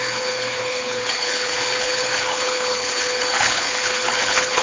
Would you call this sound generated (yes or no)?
yes